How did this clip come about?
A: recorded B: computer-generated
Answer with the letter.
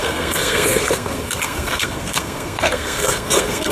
B